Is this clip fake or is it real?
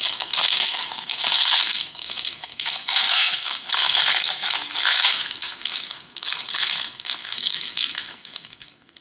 fake